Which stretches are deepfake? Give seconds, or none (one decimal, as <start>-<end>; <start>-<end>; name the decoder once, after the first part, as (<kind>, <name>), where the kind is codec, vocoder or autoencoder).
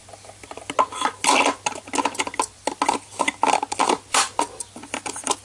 3.8-4.7 (vocoder, BigVGAN v2)